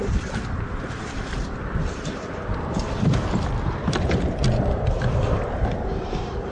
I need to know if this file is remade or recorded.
remade